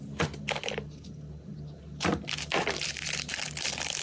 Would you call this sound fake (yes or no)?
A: no